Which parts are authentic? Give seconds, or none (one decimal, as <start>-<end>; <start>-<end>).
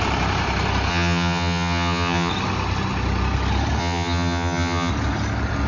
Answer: 0.0-0.9; 2.3-3.8; 4.9-5.7